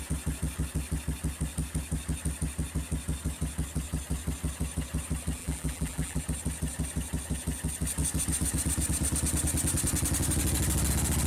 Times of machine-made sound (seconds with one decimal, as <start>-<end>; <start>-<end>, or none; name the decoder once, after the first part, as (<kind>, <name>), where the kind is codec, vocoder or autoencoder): 5.4-6.2 (vocoder, BigVGAN v2)